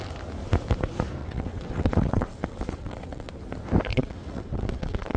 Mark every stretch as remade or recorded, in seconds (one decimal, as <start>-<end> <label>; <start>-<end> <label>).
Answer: 0.0-1.2 recorded; 1.2-3.3 remade; 3.3-3.9 recorded; 3.9-5.2 remade